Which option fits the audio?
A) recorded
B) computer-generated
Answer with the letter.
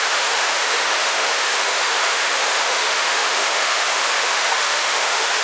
B